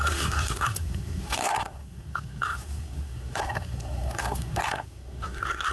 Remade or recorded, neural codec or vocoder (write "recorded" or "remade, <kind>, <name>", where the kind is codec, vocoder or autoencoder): remade, codec, SNAC